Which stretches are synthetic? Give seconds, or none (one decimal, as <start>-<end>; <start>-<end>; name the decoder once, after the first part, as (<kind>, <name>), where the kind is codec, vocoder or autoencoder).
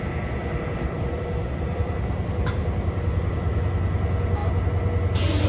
0.4-3.7 (vocoder, BigVGAN v2)